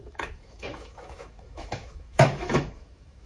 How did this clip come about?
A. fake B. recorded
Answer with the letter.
A